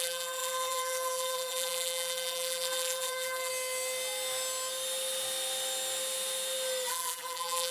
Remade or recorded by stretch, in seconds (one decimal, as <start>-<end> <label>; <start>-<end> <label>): 0.0-3.5 remade; 3.5-6.9 recorded; 6.9-7.7 remade